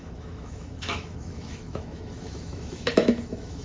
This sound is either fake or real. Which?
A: fake